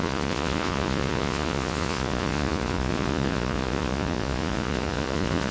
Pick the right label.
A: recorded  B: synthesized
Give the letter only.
B